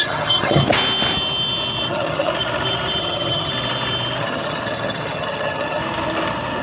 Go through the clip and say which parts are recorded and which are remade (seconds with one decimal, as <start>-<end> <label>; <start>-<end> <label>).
0.0-0.6 remade; 0.6-1.9 recorded; 1.9-2.3 remade; 2.3-3.0 recorded; 3.0-3.5 remade; 3.5-4.2 recorded; 4.2-5.8 remade; 5.8-6.6 recorded

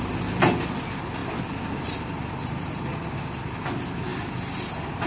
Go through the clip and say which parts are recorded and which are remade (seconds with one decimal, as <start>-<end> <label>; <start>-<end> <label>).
0.0-5.1 recorded

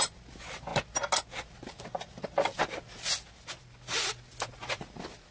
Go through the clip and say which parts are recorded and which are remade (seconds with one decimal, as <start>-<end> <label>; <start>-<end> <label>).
0.0-5.3 recorded

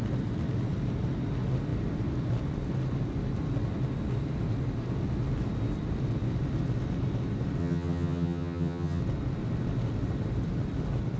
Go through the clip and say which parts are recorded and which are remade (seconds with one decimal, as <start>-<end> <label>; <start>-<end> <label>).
0.0-7.6 recorded; 7.6-9.0 remade; 9.0-11.2 recorded

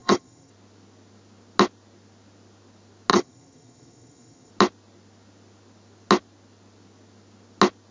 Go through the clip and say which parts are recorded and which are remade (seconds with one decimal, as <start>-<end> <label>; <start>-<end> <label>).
0.0-0.5 remade; 0.5-3.1 recorded; 3.1-4.5 remade; 4.5-7.9 recorded

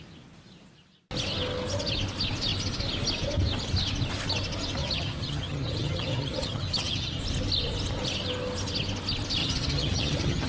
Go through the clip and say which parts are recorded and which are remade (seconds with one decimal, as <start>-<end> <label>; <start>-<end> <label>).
0.0-4.8 recorded; 4.8-7.2 remade; 7.2-9.4 recorded; 9.4-10.5 remade

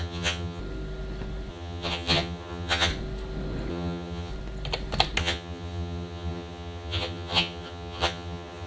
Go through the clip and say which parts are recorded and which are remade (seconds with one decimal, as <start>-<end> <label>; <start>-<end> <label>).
0.0-0.6 remade; 0.6-1.5 recorded; 1.5-2.9 remade; 2.9-3.7 recorded; 3.7-4.3 remade; 4.3-5.2 recorded; 5.2-8.7 remade

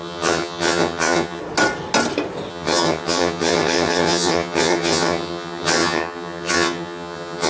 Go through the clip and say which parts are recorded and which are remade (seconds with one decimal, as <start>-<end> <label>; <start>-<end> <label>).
0.0-1.4 remade; 1.4-2.5 recorded; 2.5-7.5 remade